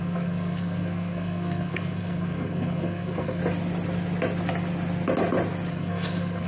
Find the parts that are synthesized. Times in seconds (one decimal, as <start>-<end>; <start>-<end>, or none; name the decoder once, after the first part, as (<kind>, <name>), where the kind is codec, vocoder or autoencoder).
0.0-3.4 (codec, SNAC); 5.7-6.5